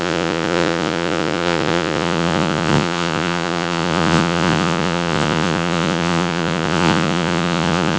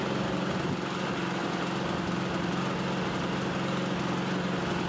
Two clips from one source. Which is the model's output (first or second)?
first